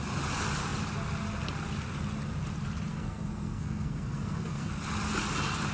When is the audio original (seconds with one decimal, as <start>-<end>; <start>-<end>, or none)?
0.0-2.9; 4.7-5.7